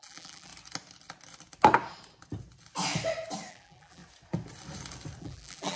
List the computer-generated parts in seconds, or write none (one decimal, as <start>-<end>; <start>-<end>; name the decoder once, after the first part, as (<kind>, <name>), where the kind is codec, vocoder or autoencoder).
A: 0.0-0.5 (vocoder, BigVGAN v2); 3.5-4.0; 5.2-5.8